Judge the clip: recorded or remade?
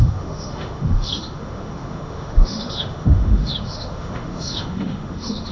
remade